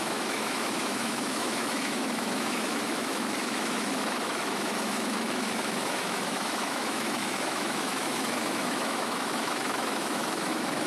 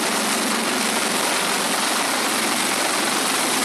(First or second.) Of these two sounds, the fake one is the first